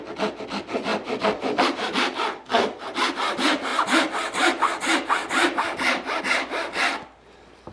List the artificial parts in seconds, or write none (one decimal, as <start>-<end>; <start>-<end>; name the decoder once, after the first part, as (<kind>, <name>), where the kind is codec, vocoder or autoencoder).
0.9-2.6 (vocoder, BigVGAN v2); 3.7-6.2